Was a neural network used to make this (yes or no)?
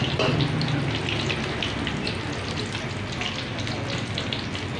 no